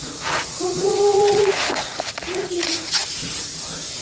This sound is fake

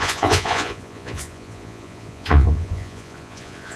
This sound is fake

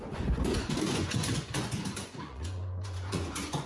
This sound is fake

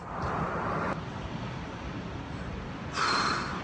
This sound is fake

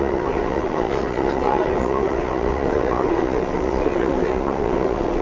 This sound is fake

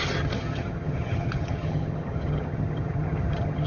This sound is fake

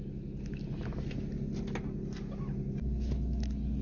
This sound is real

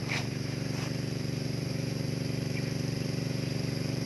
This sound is fake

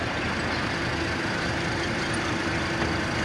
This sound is real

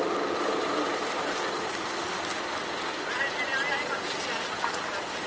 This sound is real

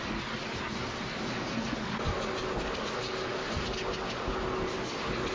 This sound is real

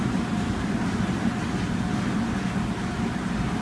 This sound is real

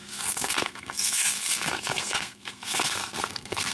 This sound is fake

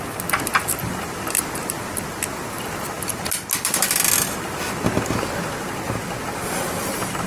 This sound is real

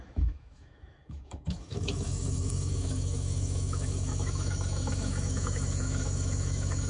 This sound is fake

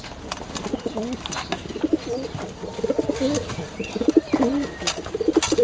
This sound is real